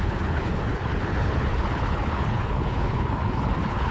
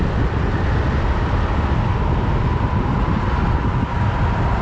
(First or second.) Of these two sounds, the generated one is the first